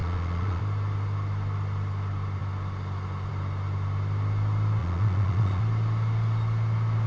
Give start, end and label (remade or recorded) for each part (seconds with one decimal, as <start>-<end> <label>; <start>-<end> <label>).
0.0-0.6 remade; 0.6-4.8 recorded; 4.8-5.6 remade; 5.6-7.1 recorded